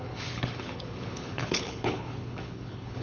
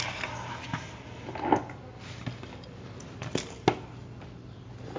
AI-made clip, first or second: first